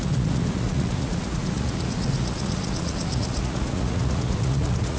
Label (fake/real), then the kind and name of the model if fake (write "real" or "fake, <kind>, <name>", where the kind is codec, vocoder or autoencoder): fake, vocoder, Vocos